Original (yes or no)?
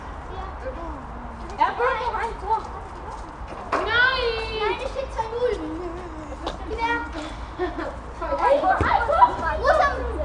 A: yes